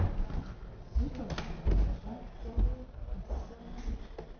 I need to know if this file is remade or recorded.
recorded